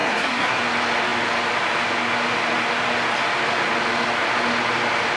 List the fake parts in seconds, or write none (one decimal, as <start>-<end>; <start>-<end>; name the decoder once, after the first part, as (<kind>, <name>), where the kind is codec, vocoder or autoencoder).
0.0-0.6 (codec, SNAC)

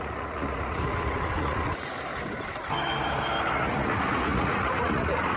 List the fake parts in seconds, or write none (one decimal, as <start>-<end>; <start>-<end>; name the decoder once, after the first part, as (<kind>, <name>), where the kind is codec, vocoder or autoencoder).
0.0-2.1 (vocoder, Vocos); 3.5-5.4

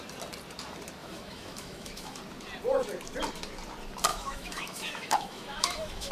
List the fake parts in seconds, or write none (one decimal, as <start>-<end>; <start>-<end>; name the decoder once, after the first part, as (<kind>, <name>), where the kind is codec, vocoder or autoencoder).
1.0-2.2 (autoencoder, DAC-VAE); 4.1-6.1

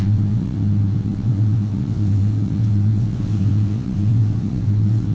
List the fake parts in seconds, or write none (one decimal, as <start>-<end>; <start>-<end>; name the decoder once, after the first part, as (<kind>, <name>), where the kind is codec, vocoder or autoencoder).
0.0-5.1 (vocoder, WaveNeXt)

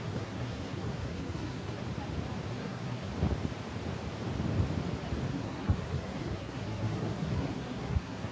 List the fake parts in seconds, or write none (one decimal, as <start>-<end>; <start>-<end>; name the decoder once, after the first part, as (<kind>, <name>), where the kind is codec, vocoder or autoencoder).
0.0-1.8 (codec, SNAC); 2.5-3.1; 5.3-8.3

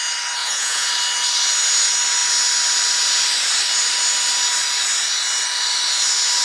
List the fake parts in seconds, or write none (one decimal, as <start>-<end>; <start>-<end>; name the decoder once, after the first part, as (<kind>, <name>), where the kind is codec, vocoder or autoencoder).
0.4-0.9 (vocoder, Vocos)